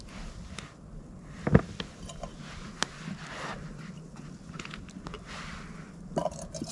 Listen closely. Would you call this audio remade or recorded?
recorded